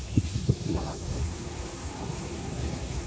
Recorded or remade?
remade